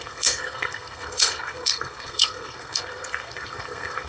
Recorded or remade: remade